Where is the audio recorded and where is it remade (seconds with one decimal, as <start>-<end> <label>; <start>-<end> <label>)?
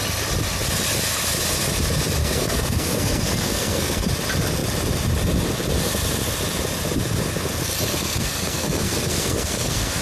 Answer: 0.0-2.2 recorded; 2.2-4.1 remade; 4.1-7.9 recorded; 7.9-10.0 remade